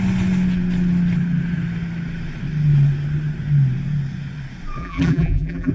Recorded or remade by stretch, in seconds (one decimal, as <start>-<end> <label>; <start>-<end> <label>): 0.0-4.8 recorded; 4.8-5.7 remade